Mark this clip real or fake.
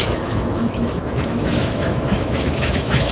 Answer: fake